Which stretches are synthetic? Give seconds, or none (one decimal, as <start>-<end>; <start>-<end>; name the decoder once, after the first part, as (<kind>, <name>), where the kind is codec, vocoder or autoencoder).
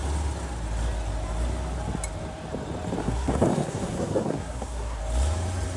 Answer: 3.0-5.0 (codec, SNAC)